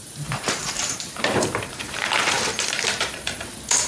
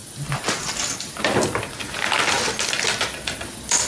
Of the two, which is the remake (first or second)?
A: first